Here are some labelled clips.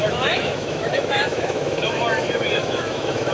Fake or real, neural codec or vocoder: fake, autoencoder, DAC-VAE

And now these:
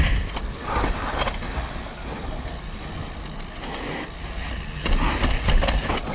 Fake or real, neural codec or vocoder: real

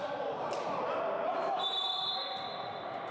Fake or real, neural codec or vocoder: real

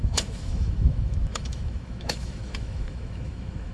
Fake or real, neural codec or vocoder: fake, autoencoder, DAC-VAE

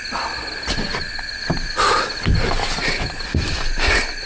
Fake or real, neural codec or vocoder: real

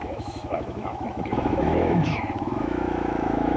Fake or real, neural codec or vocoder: fake, autoencoder, DAC-VAE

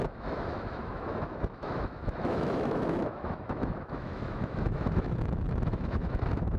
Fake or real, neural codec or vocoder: fake, autoencoder, DAC-VAE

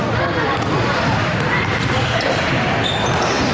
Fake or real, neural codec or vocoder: real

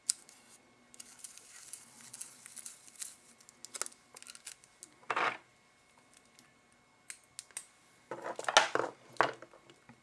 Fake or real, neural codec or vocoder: real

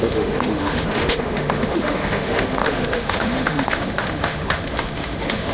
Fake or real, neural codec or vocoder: fake, autoencoder, DAC-VAE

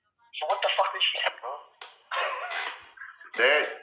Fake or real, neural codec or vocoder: real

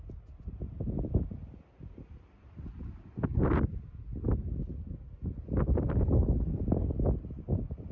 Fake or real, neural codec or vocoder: real